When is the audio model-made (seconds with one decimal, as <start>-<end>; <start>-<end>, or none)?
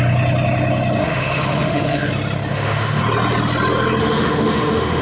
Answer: 1.0-2.1; 2.5-3.0; 4.0-5.0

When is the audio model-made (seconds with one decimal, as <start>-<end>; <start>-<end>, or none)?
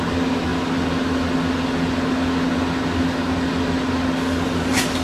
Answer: none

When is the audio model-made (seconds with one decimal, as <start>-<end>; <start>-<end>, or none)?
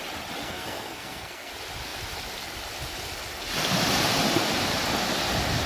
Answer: 0.4-1.5